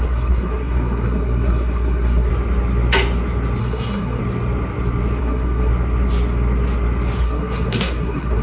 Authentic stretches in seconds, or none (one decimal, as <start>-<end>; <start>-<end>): 2.3-3.6; 4.2-5.2; 5.7-7.2

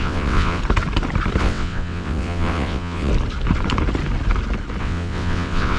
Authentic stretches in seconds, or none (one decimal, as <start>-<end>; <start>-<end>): 0.6-1.4; 3.1-4.8

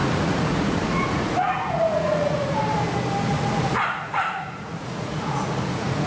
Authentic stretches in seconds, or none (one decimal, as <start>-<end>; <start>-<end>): 2.6-3.3

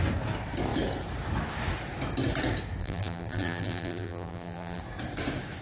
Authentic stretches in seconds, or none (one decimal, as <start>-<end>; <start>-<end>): 0.0-2.8; 4.8-5.6

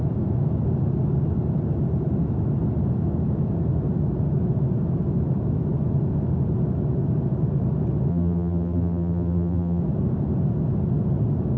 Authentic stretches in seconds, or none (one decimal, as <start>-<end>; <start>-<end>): 0.0-8.1; 9.8-11.6

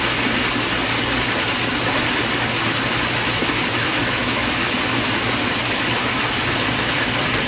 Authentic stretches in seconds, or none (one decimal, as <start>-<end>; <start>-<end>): 0.0-3.9; 4.5-7.5

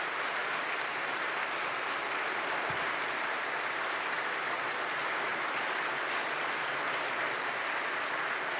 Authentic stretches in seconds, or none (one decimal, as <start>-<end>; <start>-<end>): 0.0-0.4; 1.1-8.6